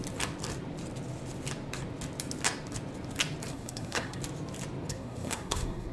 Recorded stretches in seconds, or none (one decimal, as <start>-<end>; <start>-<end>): 0.0-3.5; 4.2-4.9